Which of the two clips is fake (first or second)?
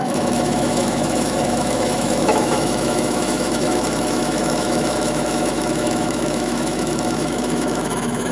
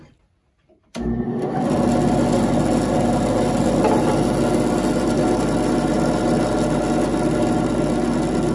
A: first